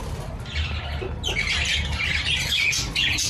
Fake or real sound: real